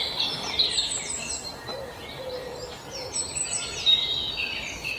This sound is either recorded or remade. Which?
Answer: recorded